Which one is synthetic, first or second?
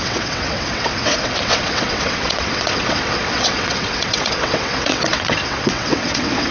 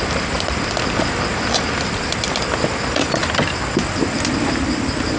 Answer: first